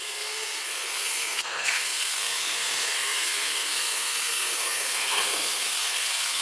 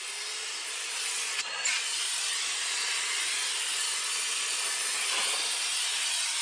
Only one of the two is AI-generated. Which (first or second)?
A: first